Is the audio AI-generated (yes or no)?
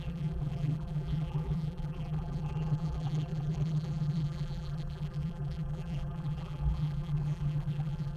yes